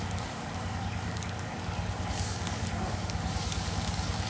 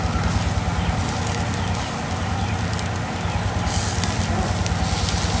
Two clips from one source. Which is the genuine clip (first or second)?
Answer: second